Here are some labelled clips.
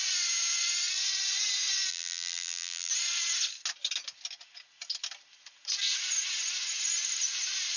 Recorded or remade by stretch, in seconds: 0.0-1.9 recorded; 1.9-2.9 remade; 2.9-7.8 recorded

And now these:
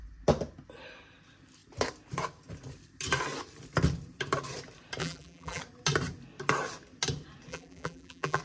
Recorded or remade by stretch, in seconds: 0.0-5.0 recorded; 5.0-5.6 remade; 5.6-7.5 recorded; 7.5-8.4 remade

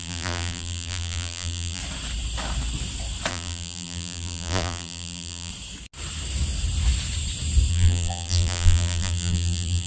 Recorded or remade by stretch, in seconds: 0.0-1.8 remade; 1.8-3.3 recorded; 3.3-5.5 remade; 5.5-7.7 recorded; 7.7-9.9 remade

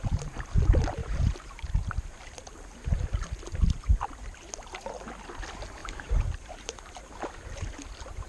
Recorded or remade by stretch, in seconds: 0.0-1.0 recorded; 1.0-2.0 remade; 2.0-5.8 recorded; 5.8-7.0 remade; 7.0-8.3 recorded

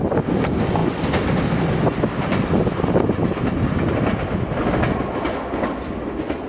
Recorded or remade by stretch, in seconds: 0.0-6.5 recorded

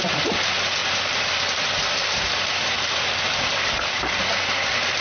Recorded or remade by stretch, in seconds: 0.0-0.8 recorded; 0.8-3.8 remade; 3.8-5.0 recorded

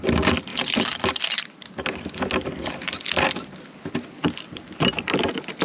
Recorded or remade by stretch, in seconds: 0.0-5.6 recorded

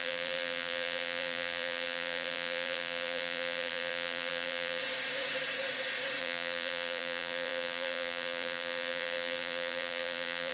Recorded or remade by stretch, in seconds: 0.0-4.8 remade; 4.8-6.2 recorded; 6.2-10.5 remade